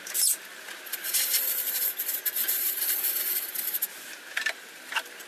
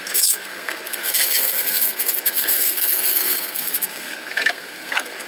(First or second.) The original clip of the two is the first